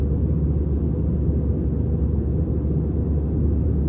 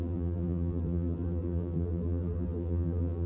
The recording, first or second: first